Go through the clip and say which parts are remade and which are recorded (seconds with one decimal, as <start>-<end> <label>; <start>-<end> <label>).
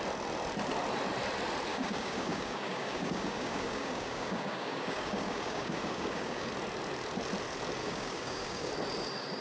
0.0-1.7 recorded; 1.7-6.5 remade; 6.5-7.8 recorded; 7.8-8.7 remade; 8.7-9.4 recorded